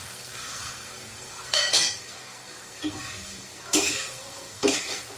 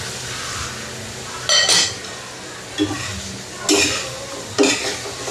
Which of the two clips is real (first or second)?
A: second